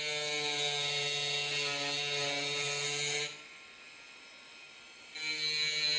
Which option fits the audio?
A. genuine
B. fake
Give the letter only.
A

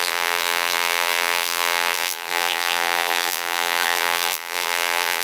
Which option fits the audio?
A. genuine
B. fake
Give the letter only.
B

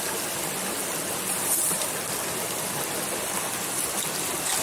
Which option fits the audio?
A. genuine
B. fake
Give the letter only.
A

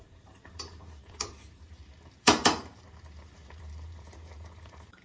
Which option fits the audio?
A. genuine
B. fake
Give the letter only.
B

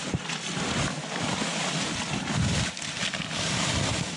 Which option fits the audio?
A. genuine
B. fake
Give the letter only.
B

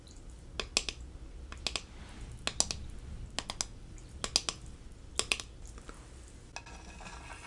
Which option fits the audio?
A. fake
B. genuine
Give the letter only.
B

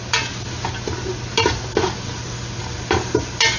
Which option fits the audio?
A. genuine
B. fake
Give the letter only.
A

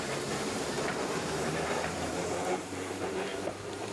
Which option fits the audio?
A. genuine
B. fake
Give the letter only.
B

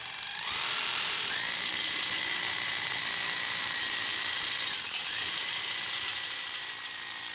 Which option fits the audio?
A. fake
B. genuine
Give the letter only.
A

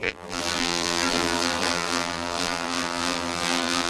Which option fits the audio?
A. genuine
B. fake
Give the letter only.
B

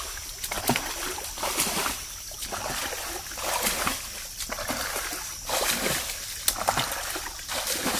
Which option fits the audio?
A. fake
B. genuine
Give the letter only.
B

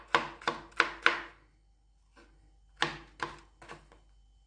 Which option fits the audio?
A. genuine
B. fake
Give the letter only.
A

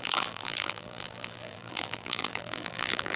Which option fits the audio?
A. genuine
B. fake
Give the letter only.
B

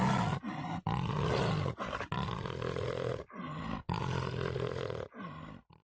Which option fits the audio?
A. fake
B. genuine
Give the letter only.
B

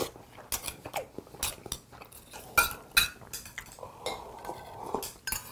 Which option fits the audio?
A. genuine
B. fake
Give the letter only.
A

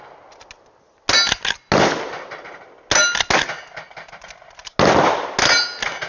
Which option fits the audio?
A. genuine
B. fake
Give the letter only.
A